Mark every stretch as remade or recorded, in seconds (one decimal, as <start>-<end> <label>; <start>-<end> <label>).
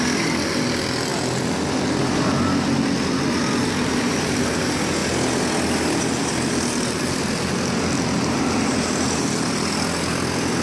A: 0.0-3.6 recorded; 3.6-4.4 remade; 4.4-10.6 recorded